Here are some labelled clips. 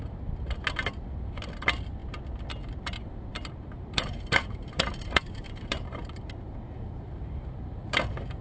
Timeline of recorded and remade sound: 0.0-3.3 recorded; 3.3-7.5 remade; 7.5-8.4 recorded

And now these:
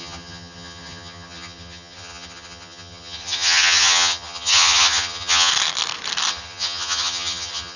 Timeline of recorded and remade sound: 0.0-5.5 remade; 5.5-6.3 recorded; 6.3-7.8 remade

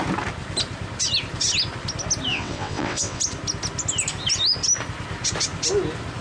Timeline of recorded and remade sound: 0.0-2.3 recorded; 2.3-3.2 remade; 3.2-6.2 recorded

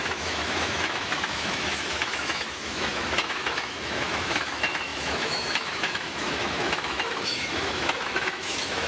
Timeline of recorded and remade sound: 0.0-8.9 remade

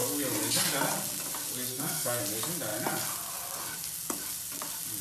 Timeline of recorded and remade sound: 0.0-1.7 recorded; 1.7-2.2 remade; 2.2-5.0 recorded

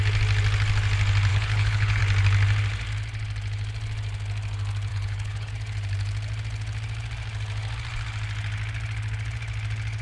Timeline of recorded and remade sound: 0.0-1.3 recorded; 1.3-2.0 remade; 2.0-4.9 recorded; 4.9-5.5 remade; 5.5-10.0 recorded

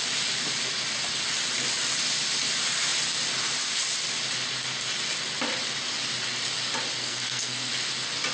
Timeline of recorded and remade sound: 0.0-7.0 recorded; 7.0-7.7 remade; 7.7-8.3 recorded